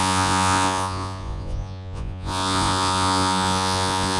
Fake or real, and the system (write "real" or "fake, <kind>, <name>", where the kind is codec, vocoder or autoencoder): fake, vocoder, Vocos